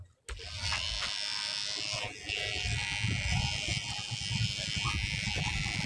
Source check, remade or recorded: recorded